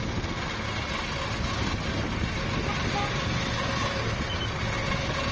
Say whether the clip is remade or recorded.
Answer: recorded